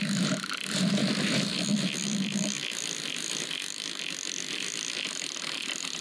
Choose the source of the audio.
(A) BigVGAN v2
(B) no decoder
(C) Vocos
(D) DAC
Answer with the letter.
B